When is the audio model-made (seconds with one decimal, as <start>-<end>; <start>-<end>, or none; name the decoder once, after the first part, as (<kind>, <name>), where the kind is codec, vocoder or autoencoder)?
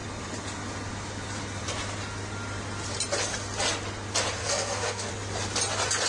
4.4-5.1 (codec, SNAC)